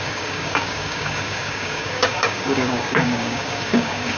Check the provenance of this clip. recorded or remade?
remade